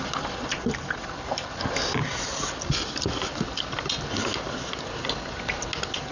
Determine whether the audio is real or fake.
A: real